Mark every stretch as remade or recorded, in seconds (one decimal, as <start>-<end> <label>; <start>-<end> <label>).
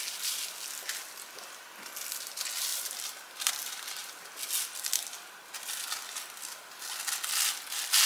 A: 0.0-2.7 recorded; 2.7-3.5 remade; 3.5-8.1 recorded